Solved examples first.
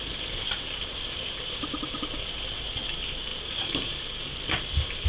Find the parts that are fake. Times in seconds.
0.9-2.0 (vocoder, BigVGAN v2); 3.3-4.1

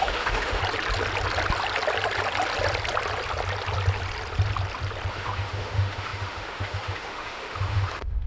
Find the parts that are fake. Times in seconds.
0.0-0.6 (autoencoder, DAC-VAE); 5.1-8.3

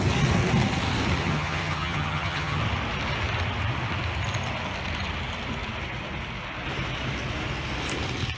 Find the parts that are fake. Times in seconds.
1.2-2.6 (vocoder, HiFi-GAN)

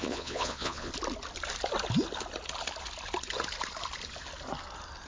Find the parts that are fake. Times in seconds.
0.0-0.9 (vocoder, Vocos)

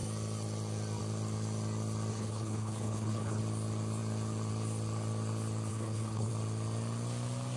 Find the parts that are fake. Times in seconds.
2.1-3.4 (codec, HILCodec); 5.7-6.3